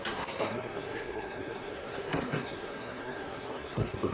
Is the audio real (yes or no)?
no